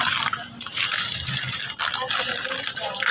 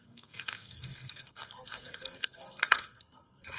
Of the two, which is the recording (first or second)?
first